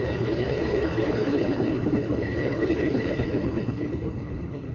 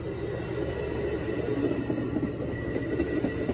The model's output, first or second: first